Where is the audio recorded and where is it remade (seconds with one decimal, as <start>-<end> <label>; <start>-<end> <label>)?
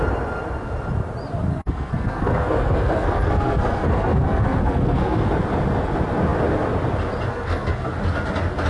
0.0-1.5 recorded; 1.5-5.3 remade; 5.3-7.3 recorded; 7.3-7.9 remade; 7.9-8.7 recorded